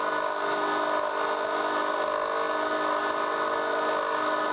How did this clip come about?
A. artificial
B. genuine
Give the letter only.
B